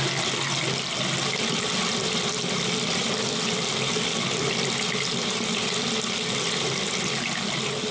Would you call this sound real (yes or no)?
yes